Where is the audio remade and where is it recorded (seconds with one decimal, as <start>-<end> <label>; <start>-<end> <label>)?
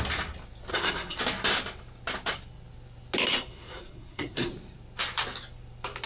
0.0-0.7 recorded; 0.7-1.2 remade; 1.2-3.3 recorded; 3.3-4.5 remade; 4.5-6.1 recorded